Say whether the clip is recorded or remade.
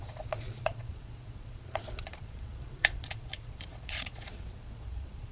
remade